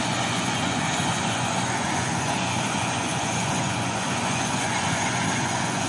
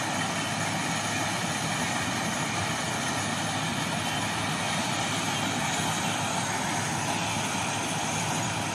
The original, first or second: second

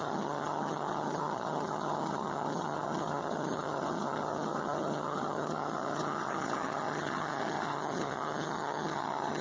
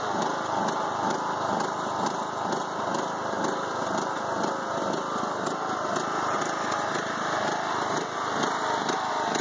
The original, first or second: second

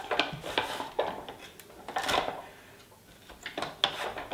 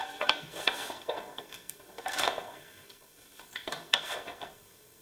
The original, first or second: first